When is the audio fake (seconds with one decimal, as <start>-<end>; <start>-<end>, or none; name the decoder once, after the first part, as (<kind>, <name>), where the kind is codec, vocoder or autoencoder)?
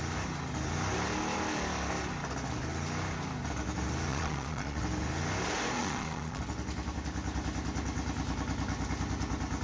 4.1-4.8 (vocoder, Vocos); 5.8-6.4